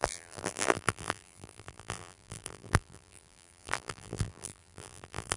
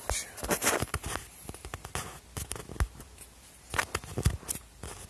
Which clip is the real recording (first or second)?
second